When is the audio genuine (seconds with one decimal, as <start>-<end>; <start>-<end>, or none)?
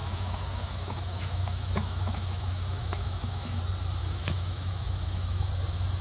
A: 3.6-4.0; 5.5-6.0